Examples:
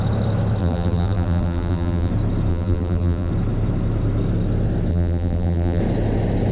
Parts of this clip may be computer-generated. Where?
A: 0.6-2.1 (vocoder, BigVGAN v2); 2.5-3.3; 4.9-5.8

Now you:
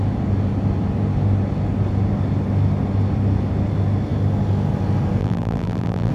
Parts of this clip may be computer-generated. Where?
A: 5.2-6.1 (vocoder, BigVGAN v2)

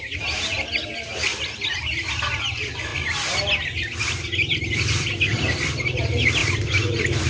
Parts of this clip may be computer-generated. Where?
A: 0.0-1.3 (vocoder, BigVGAN v2); 2.4-2.9; 4.0-7.3

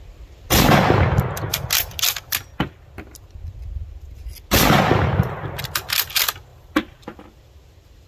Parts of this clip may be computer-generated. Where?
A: none